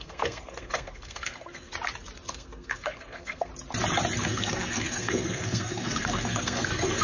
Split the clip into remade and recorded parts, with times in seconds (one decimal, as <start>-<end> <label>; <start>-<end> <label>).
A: 0.0-1.7 remade; 1.7-2.3 recorded; 2.3-3.5 remade; 3.5-4.2 recorded; 4.2-7.0 remade